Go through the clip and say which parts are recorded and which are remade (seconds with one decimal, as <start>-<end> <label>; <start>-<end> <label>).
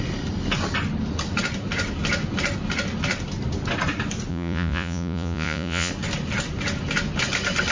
0.0-4.3 recorded; 4.3-5.9 remade; 5.9-7.7 recorded